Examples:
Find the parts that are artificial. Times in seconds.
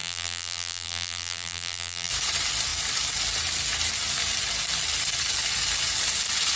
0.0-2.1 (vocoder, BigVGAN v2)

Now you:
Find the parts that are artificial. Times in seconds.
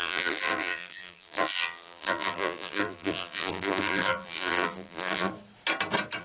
0.0-5.3 (vocoder, BigVGAN v2)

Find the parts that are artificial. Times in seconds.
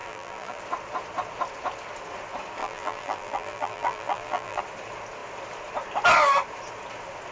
0.0-0.6 (vocoder, BigVGAN v2); 2.6-4.6